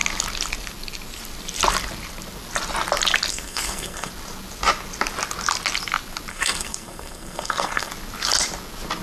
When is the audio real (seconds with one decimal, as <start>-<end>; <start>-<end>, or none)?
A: 0.0-3.3; 4.1-6.3; 7.9-9.0